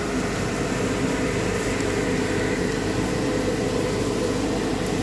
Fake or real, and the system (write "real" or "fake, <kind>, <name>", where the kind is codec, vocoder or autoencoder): real